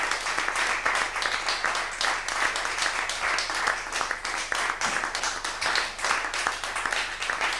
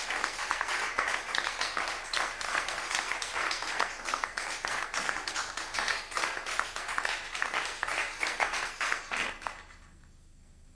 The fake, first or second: second